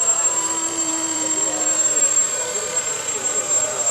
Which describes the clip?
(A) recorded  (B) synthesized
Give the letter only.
B